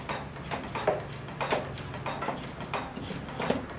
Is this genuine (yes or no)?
yes